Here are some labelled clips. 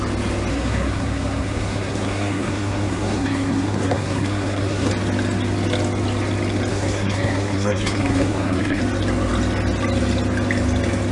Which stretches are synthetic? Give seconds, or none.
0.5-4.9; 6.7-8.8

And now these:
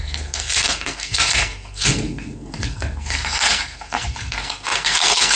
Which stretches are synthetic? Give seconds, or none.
0.0-5.4